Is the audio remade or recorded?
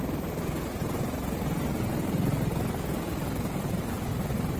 recorded